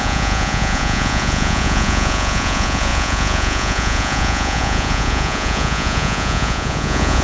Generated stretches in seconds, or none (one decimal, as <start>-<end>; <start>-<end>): 0.0-7.2